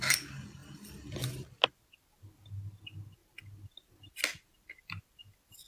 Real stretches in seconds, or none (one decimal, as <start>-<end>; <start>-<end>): 0.0-5.7